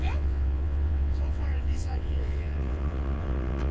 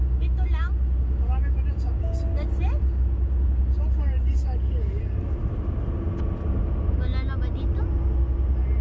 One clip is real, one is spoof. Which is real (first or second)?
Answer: second